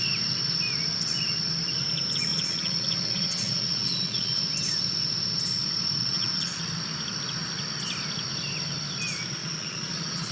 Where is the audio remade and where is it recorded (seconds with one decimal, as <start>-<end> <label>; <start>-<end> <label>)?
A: 0.0-2.3 recorded; 2.3-4.4 remade; 4.4-6.0 recorded; 6.0-6.6 remade; 6.6-9.4 recorded; 9.4-10.3 remade